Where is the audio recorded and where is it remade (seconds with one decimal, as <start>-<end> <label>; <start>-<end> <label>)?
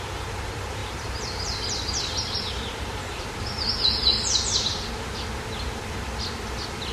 0.0-6.9 remade